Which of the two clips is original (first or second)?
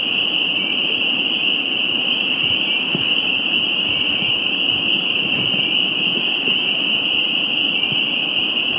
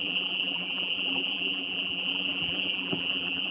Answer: first